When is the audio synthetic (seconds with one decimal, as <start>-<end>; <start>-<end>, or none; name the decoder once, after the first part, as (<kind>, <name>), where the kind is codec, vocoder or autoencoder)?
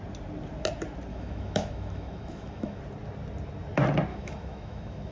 1.1-2.8 (autoencoder, DAC-VAE); 4.1-5.1